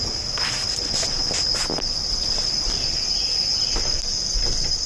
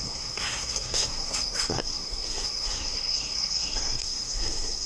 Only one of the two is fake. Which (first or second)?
second